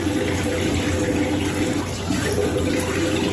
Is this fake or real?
real